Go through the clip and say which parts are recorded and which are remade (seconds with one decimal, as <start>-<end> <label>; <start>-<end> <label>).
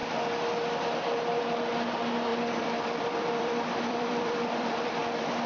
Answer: 0.0-2.3 recorded; 2.3-4.9 remade; 4.9-5.5 recorded